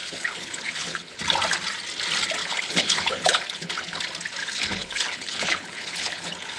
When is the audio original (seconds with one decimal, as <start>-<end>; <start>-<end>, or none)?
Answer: 1.2-2.4; 4.0-4.4